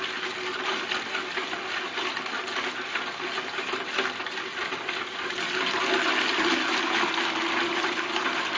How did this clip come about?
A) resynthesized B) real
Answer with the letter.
B